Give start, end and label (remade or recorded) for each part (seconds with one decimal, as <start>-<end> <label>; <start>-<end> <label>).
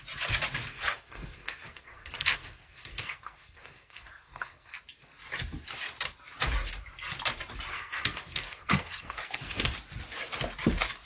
0.0-0.7 recorded; 0.7-4.8 remade; 4.8-7.7 recorded; 7.7-9.7 remade; 9.7-11.1 recorded